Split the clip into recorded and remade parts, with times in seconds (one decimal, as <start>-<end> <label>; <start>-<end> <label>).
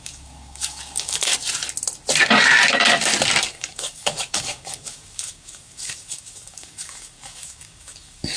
0.0-1.3 remade; 1.3-3.4 recorded; 3.4-8.4 remade